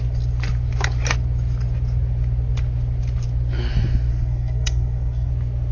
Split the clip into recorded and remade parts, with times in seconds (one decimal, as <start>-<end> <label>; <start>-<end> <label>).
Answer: 0.0-4.1 recorded; 4.1-5.3 remade; 5.3-5.7 recorded